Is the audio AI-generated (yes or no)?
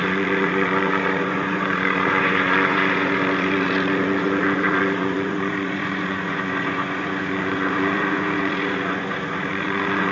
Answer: yes